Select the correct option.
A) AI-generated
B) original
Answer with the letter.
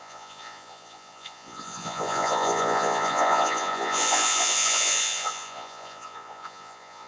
A